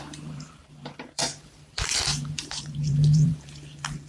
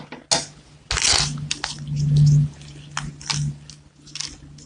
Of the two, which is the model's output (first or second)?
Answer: first